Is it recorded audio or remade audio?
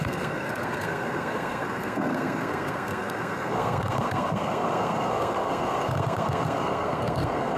remade